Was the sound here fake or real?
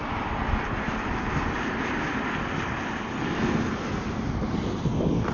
real